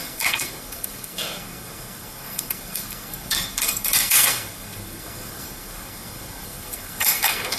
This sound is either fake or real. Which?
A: fake